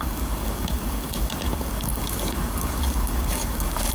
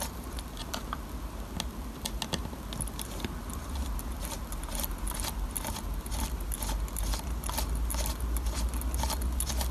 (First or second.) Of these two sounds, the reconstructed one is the first